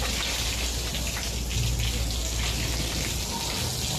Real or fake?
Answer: real